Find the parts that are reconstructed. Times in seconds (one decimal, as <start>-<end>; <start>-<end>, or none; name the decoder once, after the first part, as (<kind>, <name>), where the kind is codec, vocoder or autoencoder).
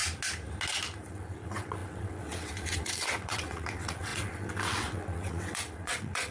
1.1-6.3 (vocoder, WaveNeXt)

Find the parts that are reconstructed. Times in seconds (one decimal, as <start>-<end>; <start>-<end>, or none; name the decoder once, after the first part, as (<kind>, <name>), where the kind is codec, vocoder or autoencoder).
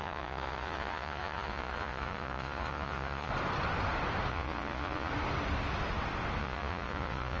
0.0-3.3 (vocoder, Vocos); 4.3-5.1; 6.4-7.4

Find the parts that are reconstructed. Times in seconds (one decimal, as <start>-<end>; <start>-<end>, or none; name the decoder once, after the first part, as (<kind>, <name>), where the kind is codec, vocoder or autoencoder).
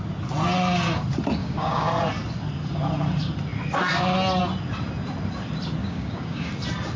1.4-1.9 (codec, DAC); 5.8-6.5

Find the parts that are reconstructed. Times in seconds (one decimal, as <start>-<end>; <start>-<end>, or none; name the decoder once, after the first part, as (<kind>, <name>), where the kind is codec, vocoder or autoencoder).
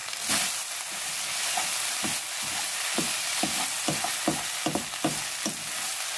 none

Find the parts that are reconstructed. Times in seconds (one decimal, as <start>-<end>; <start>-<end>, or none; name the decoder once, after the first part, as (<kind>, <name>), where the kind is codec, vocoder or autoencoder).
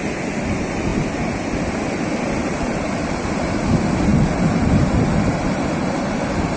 none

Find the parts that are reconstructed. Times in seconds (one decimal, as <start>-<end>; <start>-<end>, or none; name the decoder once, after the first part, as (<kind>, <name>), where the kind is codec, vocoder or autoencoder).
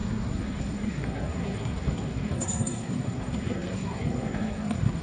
0.0-5.0 (codec, SNAC)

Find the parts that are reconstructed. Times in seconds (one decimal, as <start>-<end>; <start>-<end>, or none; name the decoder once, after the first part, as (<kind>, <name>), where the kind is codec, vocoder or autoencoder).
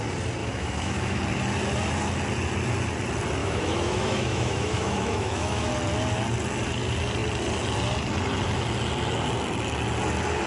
0.4-1.2 (autoencoder, DAC-VAE); 3.4-5.7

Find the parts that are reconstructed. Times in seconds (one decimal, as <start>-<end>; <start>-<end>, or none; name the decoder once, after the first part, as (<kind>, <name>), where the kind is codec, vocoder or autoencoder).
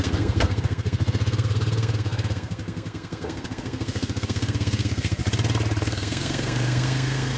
0.0-5.2 (codec, SNAC); 5.8-7.4